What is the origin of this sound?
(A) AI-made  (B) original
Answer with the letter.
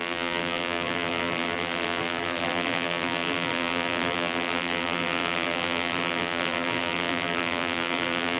A